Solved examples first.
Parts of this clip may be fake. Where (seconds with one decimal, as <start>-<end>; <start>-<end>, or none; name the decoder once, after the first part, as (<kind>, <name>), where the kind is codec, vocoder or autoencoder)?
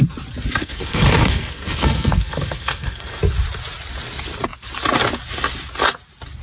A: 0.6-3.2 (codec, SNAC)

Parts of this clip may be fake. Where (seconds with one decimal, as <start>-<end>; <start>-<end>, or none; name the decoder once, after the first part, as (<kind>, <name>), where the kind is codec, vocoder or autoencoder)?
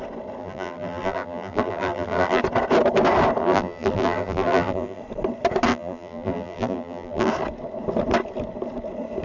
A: 0.4-2.4 (vocoder, BigVGAN v2); 3.4-5.0; 5.7-7.3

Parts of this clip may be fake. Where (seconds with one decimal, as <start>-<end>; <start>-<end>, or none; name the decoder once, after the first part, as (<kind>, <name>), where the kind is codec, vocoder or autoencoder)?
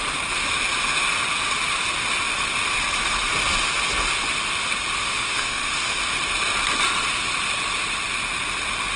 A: 5.0-5.7 (autoencoder, DAC-VAE)